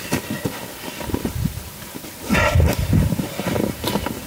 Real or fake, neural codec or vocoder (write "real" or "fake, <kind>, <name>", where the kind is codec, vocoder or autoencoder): real